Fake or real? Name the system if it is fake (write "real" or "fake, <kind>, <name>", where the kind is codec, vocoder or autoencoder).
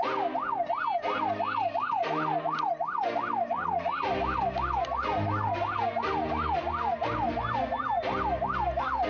real